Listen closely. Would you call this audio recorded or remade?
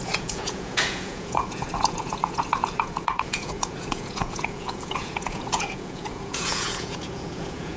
remade